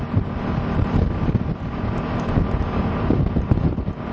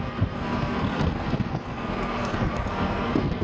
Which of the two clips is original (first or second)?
first